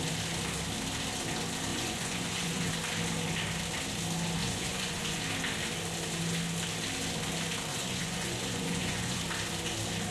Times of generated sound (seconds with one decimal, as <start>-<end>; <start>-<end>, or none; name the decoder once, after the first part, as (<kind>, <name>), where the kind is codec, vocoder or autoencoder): 1.7-2.7 (vocoder, Vocos); 4.4-5.2; 7.7-9.2